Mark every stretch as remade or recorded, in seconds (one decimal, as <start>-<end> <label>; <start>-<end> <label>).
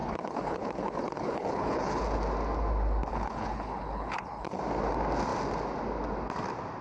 0.0-2.0 remade; 2.0-3.1 recorded; 3.1-4.6 remade; 4.6-6.8 recorded